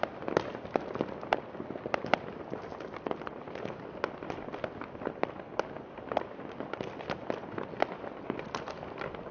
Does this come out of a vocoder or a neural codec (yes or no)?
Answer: no